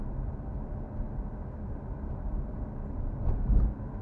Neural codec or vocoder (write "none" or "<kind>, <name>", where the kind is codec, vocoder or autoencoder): none